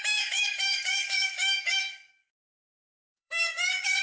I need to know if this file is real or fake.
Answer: fake